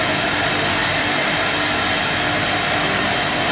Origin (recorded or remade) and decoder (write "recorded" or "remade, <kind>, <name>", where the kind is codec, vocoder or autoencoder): recorded